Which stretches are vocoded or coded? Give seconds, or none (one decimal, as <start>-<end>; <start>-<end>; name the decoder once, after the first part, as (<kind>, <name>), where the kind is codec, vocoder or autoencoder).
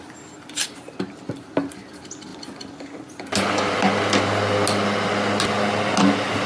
none